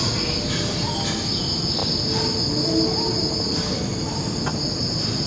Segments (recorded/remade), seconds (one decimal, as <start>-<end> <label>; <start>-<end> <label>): 0.0-5.3 recorded